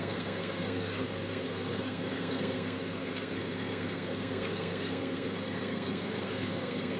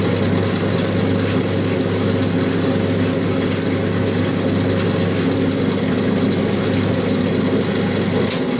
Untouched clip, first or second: second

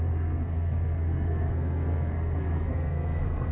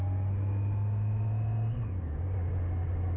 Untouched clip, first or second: second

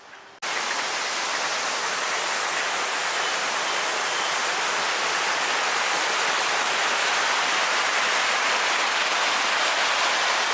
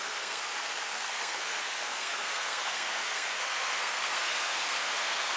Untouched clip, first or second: first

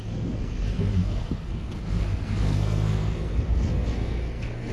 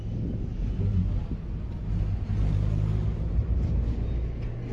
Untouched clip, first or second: second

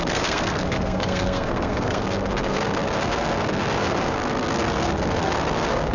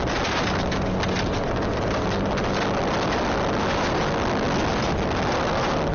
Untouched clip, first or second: second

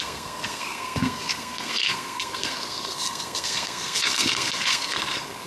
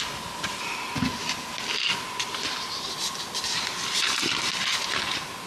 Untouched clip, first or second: second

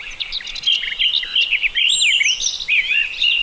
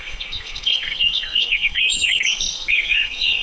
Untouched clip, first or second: first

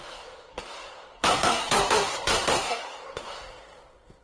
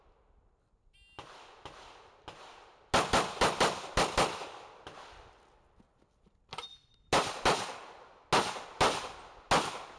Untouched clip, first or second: second